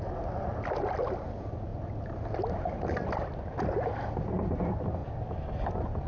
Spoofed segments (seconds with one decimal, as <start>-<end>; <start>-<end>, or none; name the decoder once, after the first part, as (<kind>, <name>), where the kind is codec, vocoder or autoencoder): none